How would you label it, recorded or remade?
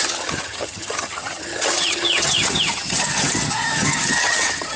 remade